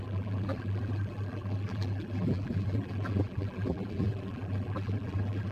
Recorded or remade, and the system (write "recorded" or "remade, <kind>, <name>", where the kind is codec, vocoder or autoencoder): remade, vocoder, BigVGAN v2